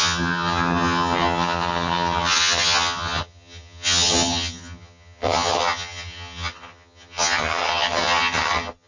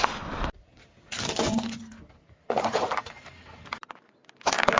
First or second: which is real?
second